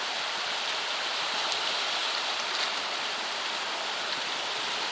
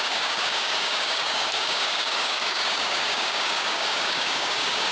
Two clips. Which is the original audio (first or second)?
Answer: first